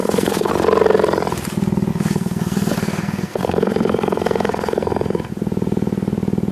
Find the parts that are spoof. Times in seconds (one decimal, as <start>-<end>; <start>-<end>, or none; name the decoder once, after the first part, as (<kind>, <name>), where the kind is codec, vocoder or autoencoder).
0.0-0.5 (codec, SNAC); 1.9-5.3